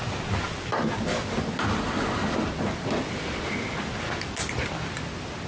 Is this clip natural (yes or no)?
yes